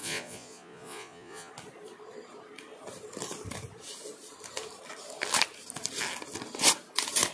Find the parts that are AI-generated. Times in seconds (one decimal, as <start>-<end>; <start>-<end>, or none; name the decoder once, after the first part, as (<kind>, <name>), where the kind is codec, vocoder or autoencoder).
0.0-1.5 (vocoder, Vocos)